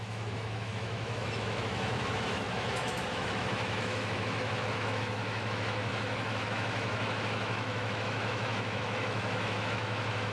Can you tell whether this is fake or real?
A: fake